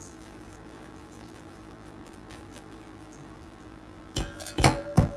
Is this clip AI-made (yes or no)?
yes